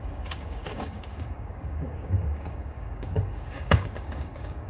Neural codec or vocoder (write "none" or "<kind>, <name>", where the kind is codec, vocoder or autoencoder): codec, DAC